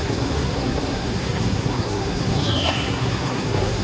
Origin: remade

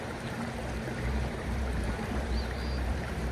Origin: remade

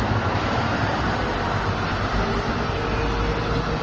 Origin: recorded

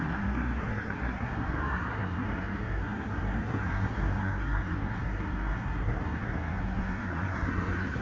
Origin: remade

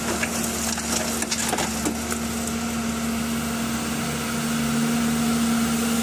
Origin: recorded